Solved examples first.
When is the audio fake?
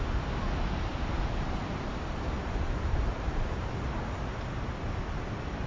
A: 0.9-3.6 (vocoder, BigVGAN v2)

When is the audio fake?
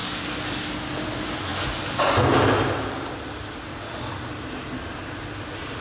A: none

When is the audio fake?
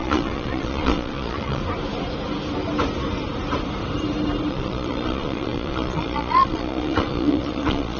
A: 0.0-1.6 (vocoder, Vocos); 4.5-8.0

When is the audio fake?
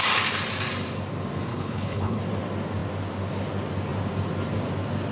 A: 1.5-2.2 (codec, HILCodec)